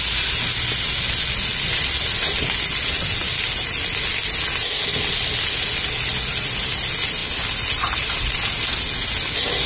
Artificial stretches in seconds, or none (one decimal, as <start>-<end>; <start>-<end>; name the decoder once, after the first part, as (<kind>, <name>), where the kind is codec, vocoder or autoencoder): none